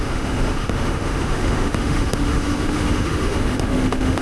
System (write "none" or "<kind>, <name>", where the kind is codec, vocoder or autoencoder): autoencoder, DAC-VAE